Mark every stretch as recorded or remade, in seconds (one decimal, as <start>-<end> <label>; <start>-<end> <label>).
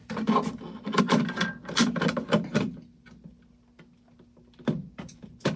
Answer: 0.0-5.6 recorded